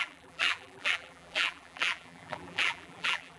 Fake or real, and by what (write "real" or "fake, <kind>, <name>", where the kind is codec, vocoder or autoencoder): fake, vocoder, BigVGAN v2